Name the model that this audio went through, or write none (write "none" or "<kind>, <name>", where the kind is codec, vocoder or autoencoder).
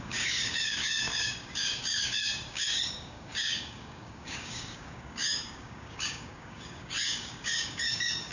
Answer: codec, DAC